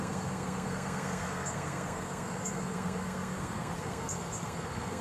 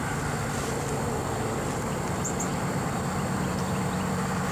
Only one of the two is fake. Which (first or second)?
first